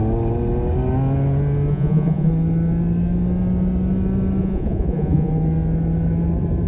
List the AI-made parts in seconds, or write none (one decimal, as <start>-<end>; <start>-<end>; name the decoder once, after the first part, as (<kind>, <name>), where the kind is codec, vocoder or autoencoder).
1.7-2.3 (vocoder, Vocos); 4.4-5.3